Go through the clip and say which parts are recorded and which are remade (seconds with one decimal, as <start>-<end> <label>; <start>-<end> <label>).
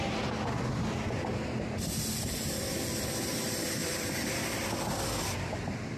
0.0-3.8 recorded; 3.8-5.0 remade; 5.0-6.0 recorded